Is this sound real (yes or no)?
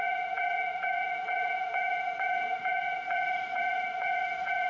no